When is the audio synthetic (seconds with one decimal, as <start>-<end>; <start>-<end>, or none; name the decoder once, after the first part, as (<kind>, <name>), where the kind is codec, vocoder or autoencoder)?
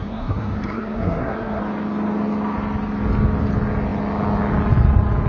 0.0-1.6 (codec, SNAC)